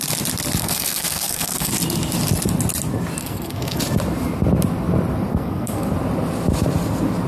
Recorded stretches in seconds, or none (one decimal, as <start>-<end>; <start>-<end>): 0.0-0.6; 1.7-3.2; 3.8-5.3; 5.9-7.3